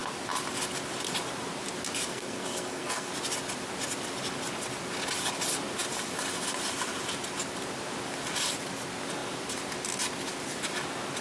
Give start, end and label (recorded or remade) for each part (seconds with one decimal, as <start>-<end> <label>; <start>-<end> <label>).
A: 0.0-2.1 recorded; 2.1-3.1 remade; 3.1-11.2 recorded